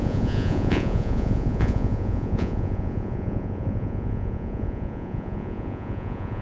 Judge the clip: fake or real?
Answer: fake